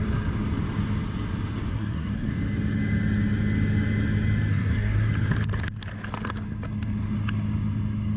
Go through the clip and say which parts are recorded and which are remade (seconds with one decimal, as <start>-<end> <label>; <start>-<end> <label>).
0.0-1.7 recorded; 1.7-2.3 remade; 2.3-4.5 recorded; 4.5-5.1 remade; 5.1-8.2 recorded